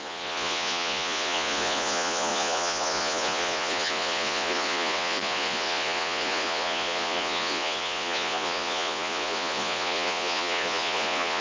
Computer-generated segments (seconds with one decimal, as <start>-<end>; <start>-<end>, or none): 0.0-11.4